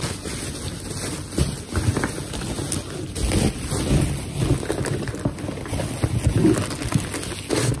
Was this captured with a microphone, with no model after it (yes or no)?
yes